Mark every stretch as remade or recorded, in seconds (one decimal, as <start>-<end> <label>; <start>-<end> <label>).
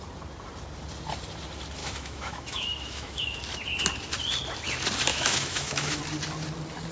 0.0-1.8 recorded; 1.8-3.4 remade; 3.4-5.1 recorded; 5.1-6.0 remade; 6.0-6.9 recorded